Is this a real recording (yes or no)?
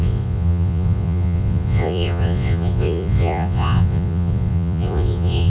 no